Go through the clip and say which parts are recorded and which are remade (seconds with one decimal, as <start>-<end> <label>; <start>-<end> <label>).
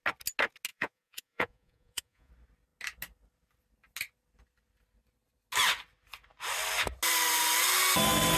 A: 0.0-0.7 recorded; 0.7-2.3 remade; 2.3-8.4 recorded